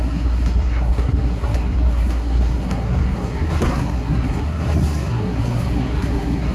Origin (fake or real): fake